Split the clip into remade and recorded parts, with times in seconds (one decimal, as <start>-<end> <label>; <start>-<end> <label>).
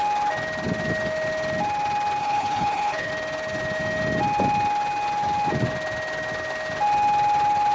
0.0-2.2 recorded; 2.2-3.1 remade; 3.1-7.7 recorded